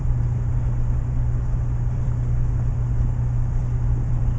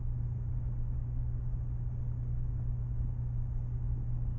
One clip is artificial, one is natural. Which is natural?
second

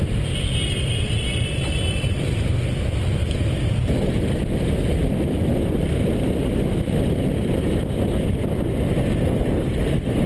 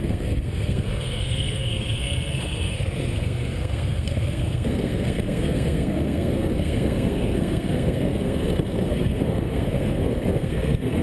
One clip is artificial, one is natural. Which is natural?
first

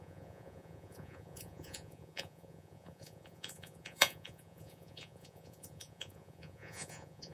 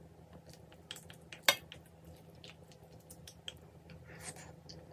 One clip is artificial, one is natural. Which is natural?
second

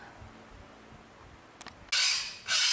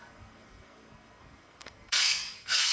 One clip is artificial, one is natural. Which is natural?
first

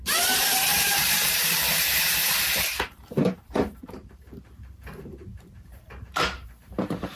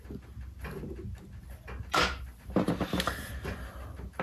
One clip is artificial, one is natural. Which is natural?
second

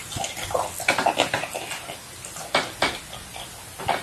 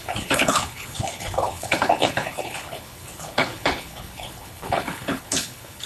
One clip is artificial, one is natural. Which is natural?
first